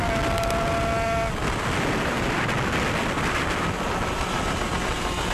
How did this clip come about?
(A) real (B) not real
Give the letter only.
A